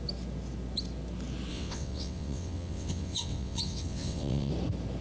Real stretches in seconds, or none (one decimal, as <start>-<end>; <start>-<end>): 0.0-1.5; 4.5-5.0